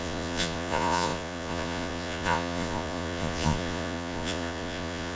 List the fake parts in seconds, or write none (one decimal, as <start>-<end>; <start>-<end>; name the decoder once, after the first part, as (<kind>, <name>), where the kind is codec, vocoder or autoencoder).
0.0-5.2 (vocoder, Vocos)